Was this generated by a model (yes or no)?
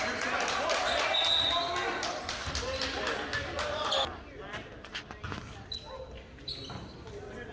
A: no